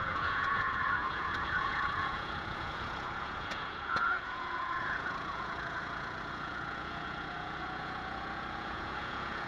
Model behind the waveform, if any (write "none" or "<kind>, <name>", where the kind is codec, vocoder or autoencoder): vocoder, Vocos